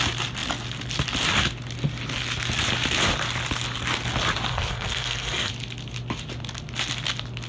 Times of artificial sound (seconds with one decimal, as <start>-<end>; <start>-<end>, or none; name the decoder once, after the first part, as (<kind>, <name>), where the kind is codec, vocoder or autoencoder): 4.5-5.5 (codec, SNAC)